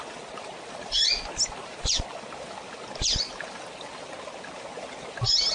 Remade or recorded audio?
recorded